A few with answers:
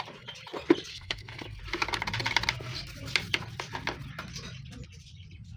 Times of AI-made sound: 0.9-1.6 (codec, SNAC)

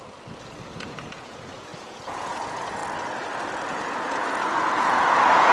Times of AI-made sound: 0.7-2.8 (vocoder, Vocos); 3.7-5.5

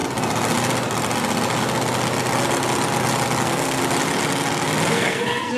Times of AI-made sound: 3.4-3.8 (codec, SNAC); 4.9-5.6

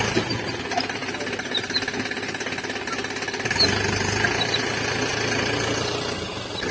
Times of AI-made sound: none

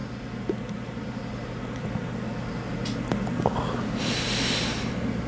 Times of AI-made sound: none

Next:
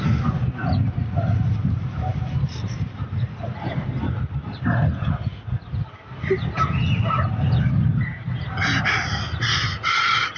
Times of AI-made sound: none